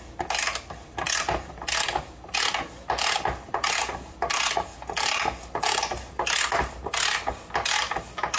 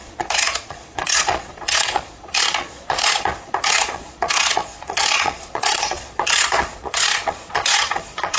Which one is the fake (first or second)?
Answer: second